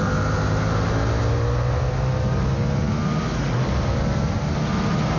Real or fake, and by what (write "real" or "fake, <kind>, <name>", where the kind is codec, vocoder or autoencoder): real